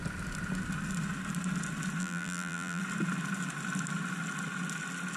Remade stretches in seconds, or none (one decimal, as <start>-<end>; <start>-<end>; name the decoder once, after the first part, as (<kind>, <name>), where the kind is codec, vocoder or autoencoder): 2.0-2.8 (vocoder, BigVGAN v2)